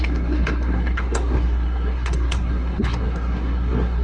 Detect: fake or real fake